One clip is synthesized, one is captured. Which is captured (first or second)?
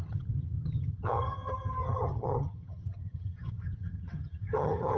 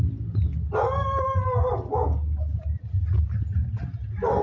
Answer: second